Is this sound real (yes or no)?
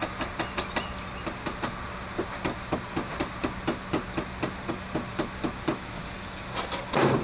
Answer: yes